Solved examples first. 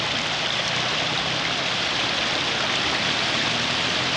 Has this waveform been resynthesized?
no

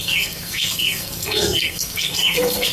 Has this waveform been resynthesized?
yes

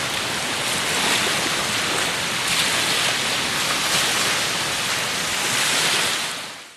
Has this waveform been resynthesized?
no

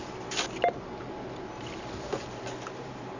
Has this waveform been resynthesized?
no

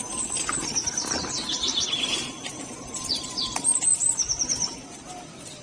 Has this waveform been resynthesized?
no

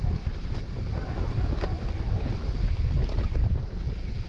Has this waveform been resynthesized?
no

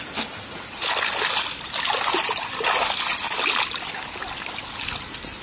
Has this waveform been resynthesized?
no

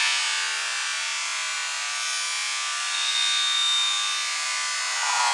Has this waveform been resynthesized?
no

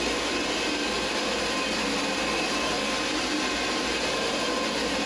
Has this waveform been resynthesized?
no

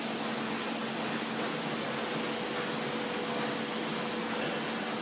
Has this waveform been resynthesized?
no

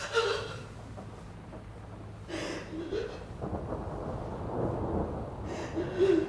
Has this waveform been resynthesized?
no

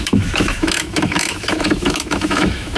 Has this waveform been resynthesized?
yes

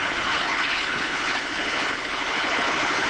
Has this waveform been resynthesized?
yes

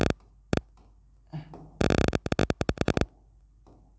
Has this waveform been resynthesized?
no